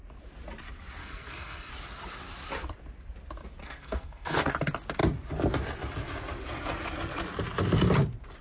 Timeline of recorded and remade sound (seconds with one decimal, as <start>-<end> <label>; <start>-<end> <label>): 0.0-1.0 recorded; 1.0-1.7 remade; 1.7-3.6 recorded; 3.6-4.5 remade; 4.5-8.4 recorded